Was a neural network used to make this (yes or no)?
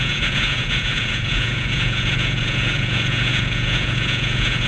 yes